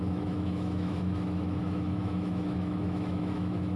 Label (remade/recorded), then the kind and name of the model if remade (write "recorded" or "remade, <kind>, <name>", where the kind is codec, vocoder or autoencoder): remade, autoencoder, DAC-VAE